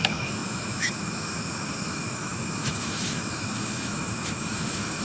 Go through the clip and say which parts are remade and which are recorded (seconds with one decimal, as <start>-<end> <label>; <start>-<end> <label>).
0.0-5.0 remade